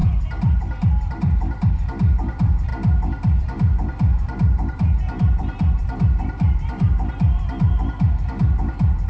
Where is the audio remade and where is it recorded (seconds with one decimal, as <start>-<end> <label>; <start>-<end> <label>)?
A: 0.0-2.7 remade; 2.7-3.4 recorded; 3.4-9.1 remade